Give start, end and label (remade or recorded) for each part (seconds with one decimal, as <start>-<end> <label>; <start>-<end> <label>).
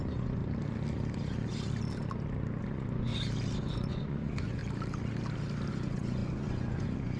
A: 0.0-0.4 remade; 0.4-2.6 recorded; 2.6-3.1 remade; 3.1-3.6 recorded; 3.6-4.6 remade; 4.6-5.7 recorded; 5.7-7.2 remade